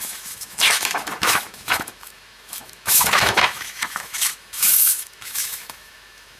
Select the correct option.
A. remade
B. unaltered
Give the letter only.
A